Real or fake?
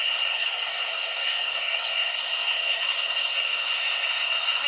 fake